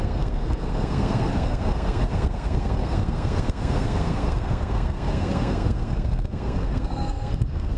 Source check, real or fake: fake